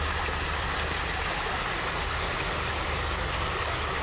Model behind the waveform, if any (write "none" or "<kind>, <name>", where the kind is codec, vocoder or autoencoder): none